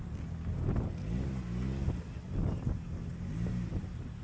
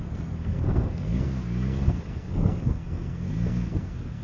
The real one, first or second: first